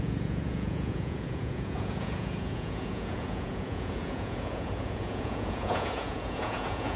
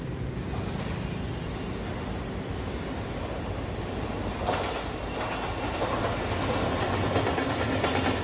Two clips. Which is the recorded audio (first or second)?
second